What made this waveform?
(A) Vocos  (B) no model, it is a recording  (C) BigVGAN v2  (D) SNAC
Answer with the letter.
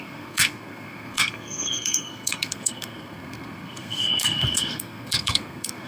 D